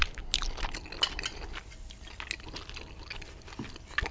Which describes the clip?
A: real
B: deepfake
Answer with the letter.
A